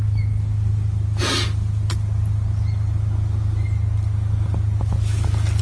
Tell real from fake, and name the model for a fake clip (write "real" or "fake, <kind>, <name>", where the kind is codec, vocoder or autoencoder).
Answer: real